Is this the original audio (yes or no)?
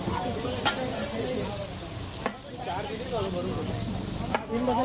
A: yes